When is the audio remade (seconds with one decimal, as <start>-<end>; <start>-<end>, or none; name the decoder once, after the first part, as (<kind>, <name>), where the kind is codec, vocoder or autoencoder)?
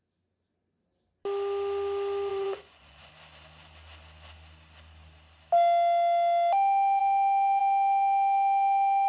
2.3-3.1 (vocoder, Vocos)